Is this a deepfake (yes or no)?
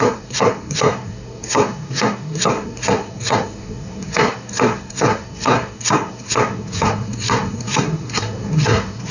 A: yes